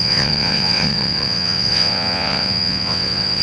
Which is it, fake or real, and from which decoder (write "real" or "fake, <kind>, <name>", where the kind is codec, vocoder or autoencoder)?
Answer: fake, vocoder, WaveNeXt